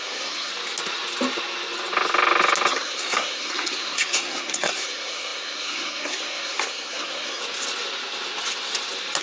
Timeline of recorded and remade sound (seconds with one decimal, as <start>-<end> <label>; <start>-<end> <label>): 0.0-0.5 remade; 0.5-2.7 recorded; 2.7-7.4 remade; 7.4-9.2 recorded

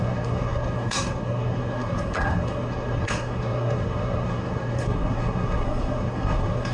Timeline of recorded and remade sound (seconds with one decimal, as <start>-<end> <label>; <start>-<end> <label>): 0.0-6.7 remade

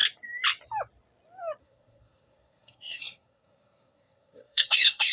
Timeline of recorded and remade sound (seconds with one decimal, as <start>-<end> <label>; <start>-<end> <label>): 0.0-1.6 recorded; 1.6-5.1 remade

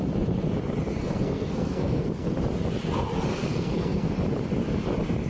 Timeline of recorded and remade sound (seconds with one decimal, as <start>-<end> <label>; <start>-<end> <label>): 0.0-1.0 recorded; 1.0-2.3 remade; 2.3-3.3 recorded; 3.3-4.1 remade; 4.1-5.3 recorded

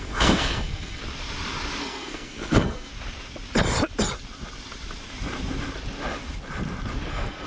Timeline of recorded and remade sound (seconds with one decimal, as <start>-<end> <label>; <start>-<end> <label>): 0.0-1.0 remade; 1.0-1.8 recorded; 1.8-2.9 remade; 2.9-7.1 recorded; 7.1-7.5 remade

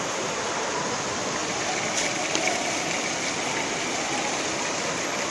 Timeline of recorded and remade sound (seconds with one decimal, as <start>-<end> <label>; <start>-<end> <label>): 0.0-5.3 recorded

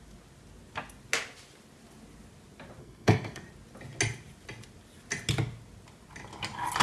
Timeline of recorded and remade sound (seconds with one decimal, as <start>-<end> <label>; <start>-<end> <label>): 0.0-2.8 recorded; 2.8-3.4 remade; 3.4-6.8 recorded